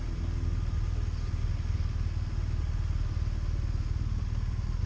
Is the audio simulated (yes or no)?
no